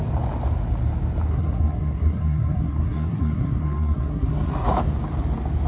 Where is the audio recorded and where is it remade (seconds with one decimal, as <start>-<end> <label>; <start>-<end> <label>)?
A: 0.0-1.3 recorded; 1.3-4.7 remade; 4.7-5.7 recorded